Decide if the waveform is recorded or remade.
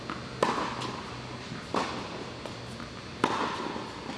recorded